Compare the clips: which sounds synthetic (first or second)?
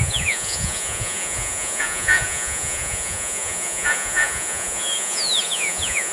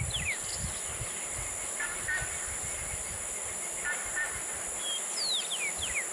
first